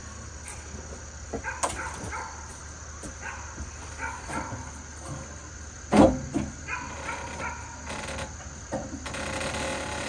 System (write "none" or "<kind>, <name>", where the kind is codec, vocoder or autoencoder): none